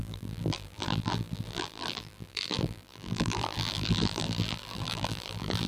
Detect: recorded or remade remade